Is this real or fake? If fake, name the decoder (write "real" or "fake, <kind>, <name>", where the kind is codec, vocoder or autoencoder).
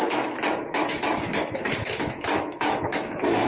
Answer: fake, autoencoder, DAC-VAE